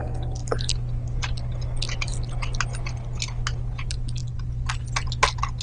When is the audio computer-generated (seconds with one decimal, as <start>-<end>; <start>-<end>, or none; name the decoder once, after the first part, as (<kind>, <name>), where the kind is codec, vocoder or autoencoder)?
none